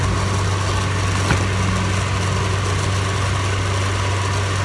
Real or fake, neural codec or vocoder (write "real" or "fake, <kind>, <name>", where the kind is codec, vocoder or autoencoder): real